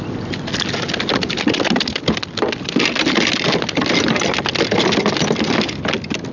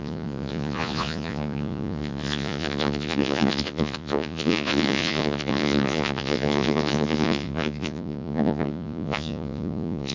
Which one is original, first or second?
first